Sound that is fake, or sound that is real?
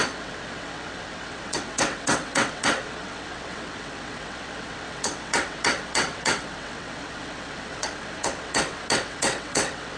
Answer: fake